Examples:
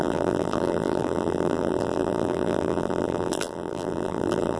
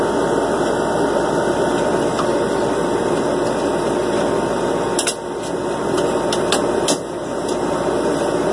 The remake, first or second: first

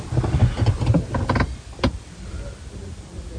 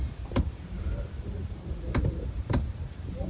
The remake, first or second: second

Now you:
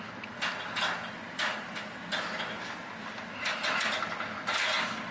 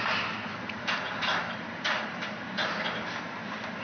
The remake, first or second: second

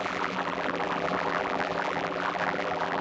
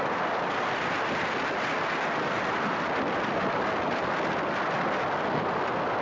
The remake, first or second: first